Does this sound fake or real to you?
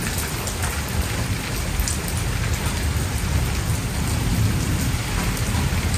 real